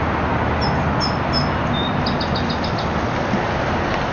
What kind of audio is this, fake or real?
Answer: real